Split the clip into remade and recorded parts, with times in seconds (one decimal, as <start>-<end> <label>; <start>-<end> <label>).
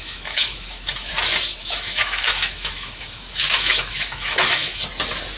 0.0-1.1 remade; 1.1-1.6 recorded; 1.6-4.8 remade; 4.8-5.4 recorded